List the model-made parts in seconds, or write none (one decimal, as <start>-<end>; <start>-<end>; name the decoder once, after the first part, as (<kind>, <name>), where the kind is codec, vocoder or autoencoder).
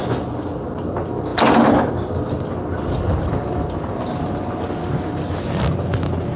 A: none